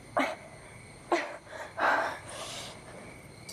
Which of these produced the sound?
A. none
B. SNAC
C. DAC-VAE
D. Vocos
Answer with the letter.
A